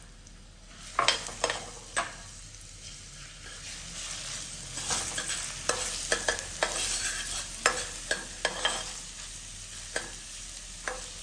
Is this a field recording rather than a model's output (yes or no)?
yes